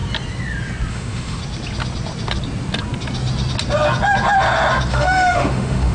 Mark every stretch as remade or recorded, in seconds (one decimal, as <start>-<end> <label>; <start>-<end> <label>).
0.0-0.9 recorded; 0.9-1.4 remade; 1.4-4.9 recorded; 4.9-5.9 remade